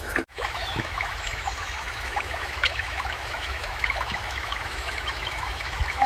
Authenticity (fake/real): fake